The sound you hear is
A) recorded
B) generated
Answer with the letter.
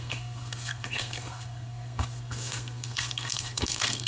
B